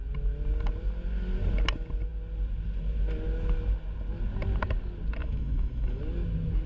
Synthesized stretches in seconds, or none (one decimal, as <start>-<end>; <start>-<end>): 5.2-6.0